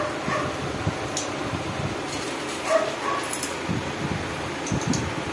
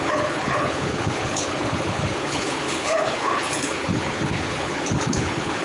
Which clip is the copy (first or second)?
second